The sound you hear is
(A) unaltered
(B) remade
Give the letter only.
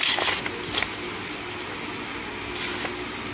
A